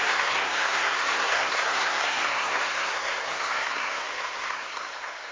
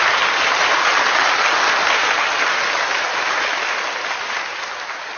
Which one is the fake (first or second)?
first